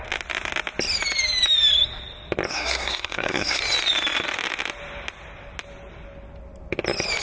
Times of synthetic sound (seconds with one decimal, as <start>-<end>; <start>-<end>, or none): 2.5-3.6